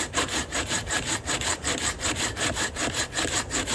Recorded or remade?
remade